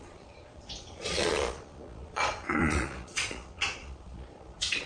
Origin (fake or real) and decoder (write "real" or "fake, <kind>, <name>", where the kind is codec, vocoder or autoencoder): fake, vocoder, Vocos